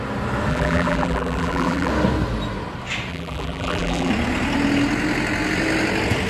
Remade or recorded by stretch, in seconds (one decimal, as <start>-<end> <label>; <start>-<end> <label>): 0.0-0.5 recorded; 0.5-1.9 remade; 1.9-3.1 recorded; 3.1-4.1 remade; 4.1-6.3 recorded